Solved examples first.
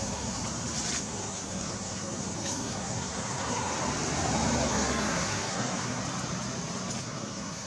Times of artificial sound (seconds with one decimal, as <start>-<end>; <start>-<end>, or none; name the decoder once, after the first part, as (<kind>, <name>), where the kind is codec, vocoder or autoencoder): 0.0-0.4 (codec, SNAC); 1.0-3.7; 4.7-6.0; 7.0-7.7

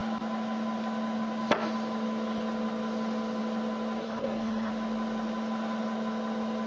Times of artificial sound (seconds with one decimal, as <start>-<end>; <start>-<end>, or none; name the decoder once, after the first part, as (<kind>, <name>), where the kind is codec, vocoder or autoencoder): 4.0-4.7 (codec, SNAC)

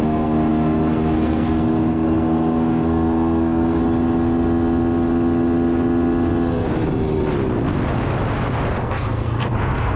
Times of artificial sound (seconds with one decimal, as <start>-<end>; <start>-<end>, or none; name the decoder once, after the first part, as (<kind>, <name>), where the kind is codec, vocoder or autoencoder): 0.0-3.8 (codec, SNAC); 8.8-10.0

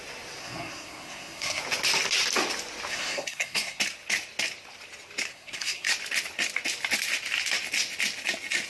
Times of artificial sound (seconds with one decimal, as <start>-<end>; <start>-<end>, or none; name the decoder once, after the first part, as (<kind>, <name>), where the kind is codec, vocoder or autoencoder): 0.4-1.6 (codec, SNAC); 2.9-3.8; 5.3-5.9